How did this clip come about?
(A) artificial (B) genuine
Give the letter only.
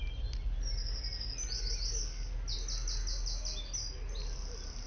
B